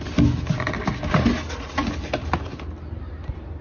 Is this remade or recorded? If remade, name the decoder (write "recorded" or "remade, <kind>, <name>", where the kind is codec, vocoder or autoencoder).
recorded